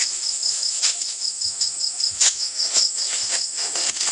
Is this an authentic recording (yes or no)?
no